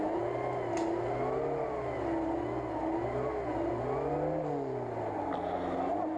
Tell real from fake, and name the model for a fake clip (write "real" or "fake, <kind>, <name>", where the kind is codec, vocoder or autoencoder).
real